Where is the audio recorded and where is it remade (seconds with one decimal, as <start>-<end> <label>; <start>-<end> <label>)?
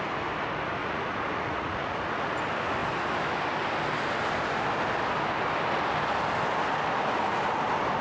0.0-0.8 recorded; 0.8-2.3 remade; 2.3-8.0 recorded